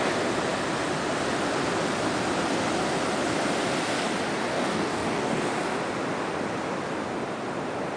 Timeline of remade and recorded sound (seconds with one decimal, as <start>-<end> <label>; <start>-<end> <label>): 0.0-4.5 recorded; 4.5-5.4 remade; 5.4-8.0 recorded